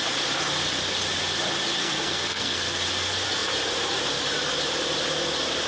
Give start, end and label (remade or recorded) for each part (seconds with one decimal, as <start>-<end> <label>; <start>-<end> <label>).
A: 0.0-1.8 recorded; 1.8-2.8 remade; 2.8-5.7 recorded